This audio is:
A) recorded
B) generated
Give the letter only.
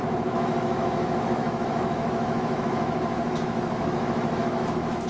B